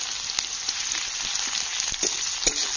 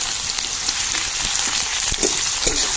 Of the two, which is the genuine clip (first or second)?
first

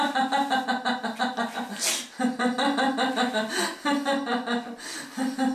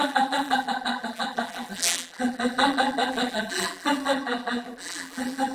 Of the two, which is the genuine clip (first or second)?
first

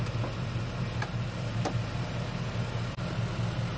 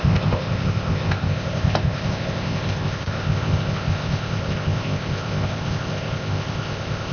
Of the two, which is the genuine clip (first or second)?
first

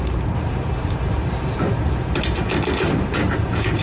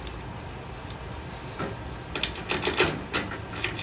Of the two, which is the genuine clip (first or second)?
second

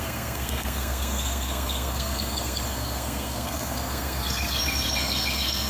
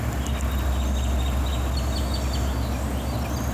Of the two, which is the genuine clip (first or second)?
second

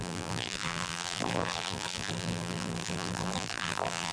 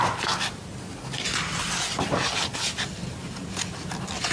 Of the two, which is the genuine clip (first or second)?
second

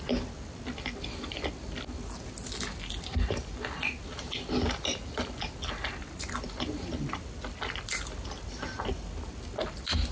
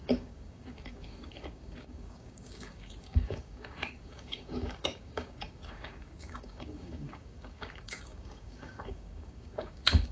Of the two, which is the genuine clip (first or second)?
first